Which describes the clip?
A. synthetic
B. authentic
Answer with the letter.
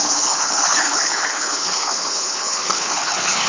A